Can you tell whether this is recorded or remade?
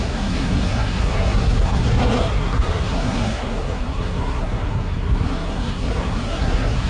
remade